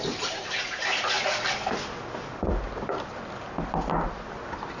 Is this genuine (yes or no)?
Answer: yes